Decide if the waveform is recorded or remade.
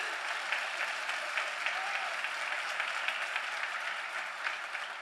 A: recorded